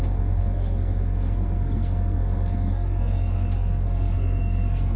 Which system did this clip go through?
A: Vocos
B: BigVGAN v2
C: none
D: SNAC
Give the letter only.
D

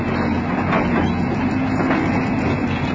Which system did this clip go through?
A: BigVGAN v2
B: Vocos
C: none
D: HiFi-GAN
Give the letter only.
C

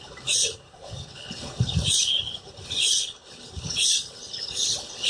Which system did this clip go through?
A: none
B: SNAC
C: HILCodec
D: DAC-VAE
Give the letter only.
C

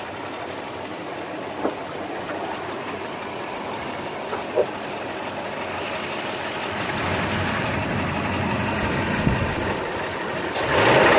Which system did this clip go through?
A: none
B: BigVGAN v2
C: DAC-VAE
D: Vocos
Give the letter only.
A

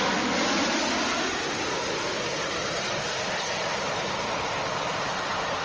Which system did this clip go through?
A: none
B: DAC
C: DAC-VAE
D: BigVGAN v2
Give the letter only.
A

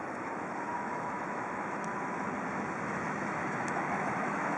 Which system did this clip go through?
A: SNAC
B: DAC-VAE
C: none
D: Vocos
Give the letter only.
B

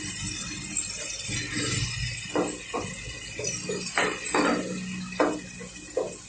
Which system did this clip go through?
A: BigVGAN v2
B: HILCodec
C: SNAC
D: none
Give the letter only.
D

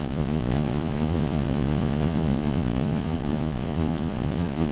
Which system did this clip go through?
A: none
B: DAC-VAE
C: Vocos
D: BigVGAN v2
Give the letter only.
C